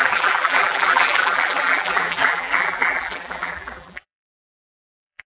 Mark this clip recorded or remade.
remade